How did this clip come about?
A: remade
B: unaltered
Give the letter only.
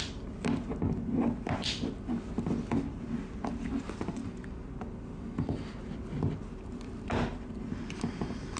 B